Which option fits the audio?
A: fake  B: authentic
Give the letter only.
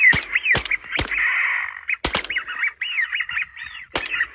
B